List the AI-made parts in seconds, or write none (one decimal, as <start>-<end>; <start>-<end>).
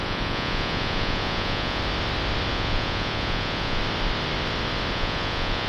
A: 0.0-1.8; 2.5-3.8; 4.9-5.7